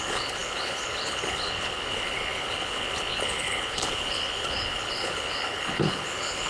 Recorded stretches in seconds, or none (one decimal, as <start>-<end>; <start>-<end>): none